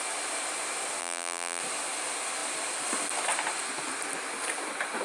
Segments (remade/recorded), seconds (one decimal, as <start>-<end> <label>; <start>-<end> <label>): 0.0-1.0 recorded; 1.0-1.6 remade; 1.6-5.0 recorded